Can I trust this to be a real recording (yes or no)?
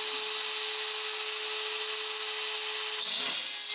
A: yes